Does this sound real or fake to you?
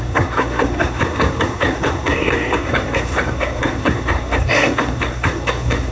fake